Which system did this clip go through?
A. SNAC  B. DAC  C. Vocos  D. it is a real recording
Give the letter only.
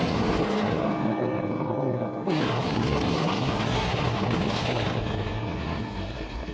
A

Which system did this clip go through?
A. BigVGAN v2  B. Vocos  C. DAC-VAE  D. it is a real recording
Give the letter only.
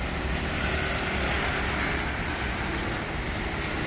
D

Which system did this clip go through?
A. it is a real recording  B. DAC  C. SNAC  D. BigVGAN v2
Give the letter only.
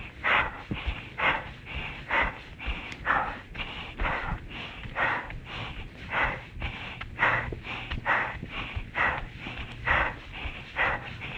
A